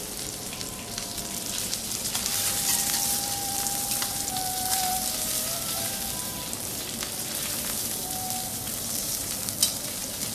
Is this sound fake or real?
fake